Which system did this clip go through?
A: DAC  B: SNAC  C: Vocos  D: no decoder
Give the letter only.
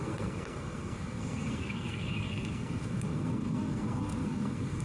B